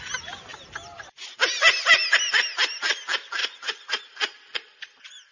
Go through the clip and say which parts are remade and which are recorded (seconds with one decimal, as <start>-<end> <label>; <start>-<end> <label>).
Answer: 0.0-3.4 recorded; 3.4-3.9 remade; 3.9-5.3 recorded